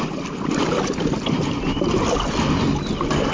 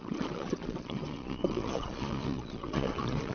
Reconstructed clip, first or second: second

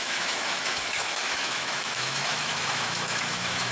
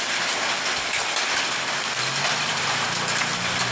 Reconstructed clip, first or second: first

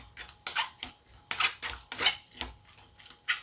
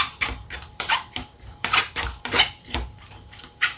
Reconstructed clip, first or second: second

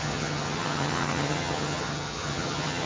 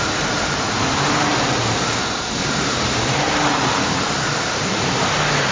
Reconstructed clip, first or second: first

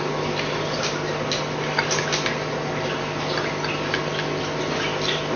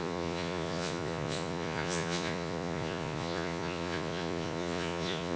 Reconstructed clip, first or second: second